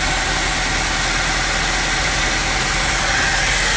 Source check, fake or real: real